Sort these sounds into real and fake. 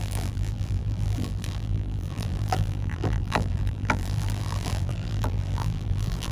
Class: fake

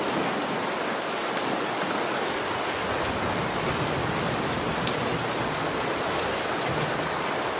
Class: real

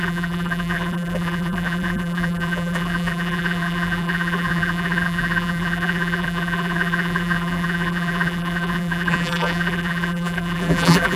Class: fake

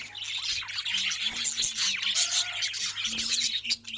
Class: real